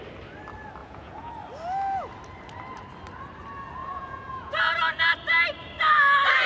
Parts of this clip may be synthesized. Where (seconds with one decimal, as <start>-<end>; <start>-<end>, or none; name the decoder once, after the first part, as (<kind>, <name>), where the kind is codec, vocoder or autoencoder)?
0.8-1.3 (vocoder, Vocos); 3.8-4.7